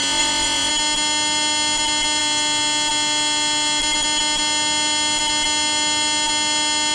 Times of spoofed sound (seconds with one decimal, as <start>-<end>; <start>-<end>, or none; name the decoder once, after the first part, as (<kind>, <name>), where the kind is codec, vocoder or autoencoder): 0.0-0.7 (vocoder, Vocos)